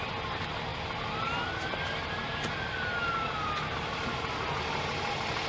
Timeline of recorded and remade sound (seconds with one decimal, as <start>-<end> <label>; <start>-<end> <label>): 0.0-5.5 recorded